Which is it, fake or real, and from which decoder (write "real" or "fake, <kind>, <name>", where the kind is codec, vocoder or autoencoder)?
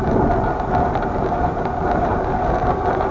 real